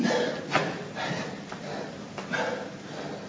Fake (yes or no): no